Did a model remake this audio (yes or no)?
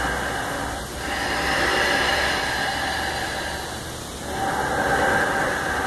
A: no